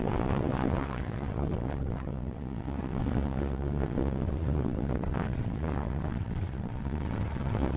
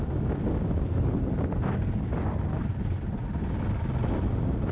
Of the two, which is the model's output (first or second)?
first